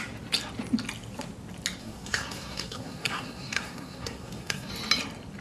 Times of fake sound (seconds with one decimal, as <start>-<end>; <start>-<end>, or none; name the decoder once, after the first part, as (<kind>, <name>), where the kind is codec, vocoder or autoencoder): 1.8-4.7 (codec, SNAC)